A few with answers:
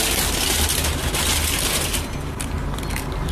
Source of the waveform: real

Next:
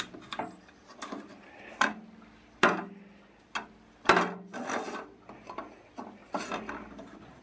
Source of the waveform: real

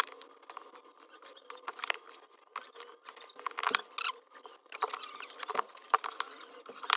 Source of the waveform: real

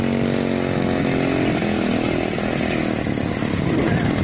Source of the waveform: real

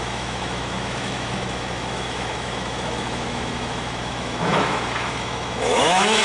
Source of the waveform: fake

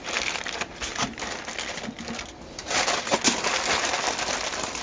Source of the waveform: real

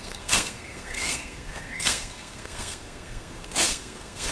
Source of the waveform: fake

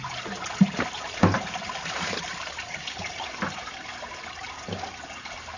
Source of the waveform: fake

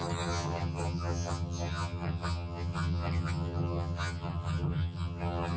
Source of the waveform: fake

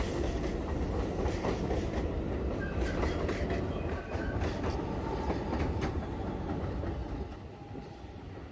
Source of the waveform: real